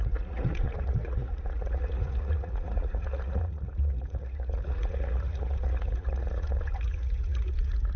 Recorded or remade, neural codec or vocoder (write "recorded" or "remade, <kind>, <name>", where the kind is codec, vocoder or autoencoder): remade, vocoder, Vocos